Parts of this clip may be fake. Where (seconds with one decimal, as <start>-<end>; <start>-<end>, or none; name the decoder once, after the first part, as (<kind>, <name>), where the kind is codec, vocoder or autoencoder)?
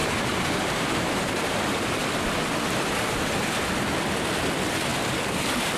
0.0-1.6 (vocoder, BigVGAN v2)